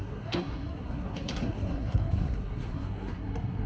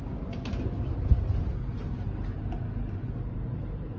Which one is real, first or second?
second